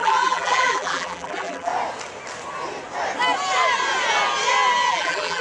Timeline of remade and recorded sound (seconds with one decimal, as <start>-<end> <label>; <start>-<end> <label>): 0.0-1.7 remade; 1.7-4.9 recorded; 4.9-5.4 remade